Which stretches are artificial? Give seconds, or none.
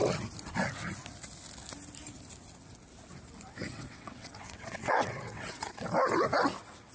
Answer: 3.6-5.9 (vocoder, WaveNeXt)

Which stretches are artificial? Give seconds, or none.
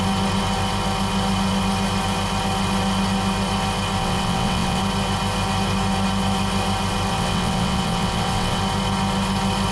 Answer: 4.0-4.8 (vocoder, WaveNeXt); 7.1-8.6